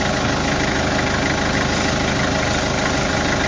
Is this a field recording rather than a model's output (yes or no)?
yes